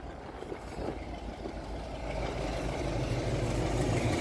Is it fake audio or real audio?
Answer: fake